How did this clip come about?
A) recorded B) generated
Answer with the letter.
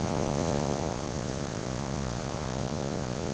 B